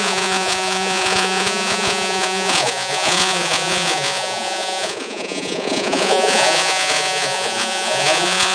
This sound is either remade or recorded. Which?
remade